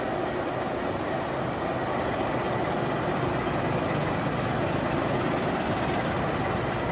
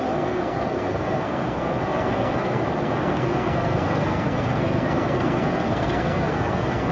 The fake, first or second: second